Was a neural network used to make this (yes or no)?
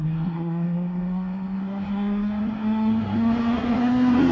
yes